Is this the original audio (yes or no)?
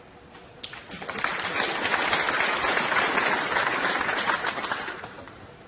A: yes